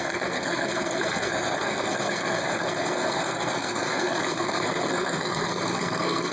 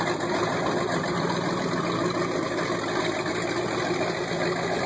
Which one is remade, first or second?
first